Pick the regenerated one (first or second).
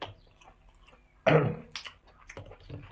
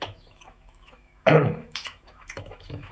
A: second